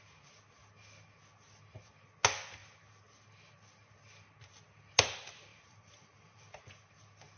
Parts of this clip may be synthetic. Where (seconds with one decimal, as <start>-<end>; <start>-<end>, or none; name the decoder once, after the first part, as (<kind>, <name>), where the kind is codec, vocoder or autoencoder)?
5.5-6.9 (vocoder, BigVGAN v2)